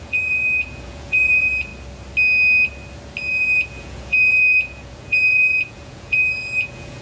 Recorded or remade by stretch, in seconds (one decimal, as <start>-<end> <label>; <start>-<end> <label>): 0.0-1.7 remade; 1.7-3.3 recorded; 3.3-7.0 remade